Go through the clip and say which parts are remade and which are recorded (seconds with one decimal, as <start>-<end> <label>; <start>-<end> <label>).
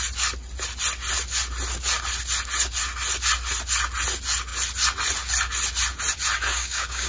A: 0.0-6.5 recorded; 6.5-7.1 remade